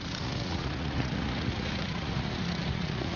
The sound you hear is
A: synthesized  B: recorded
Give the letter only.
A